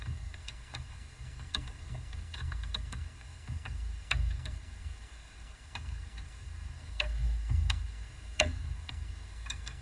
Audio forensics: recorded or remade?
remade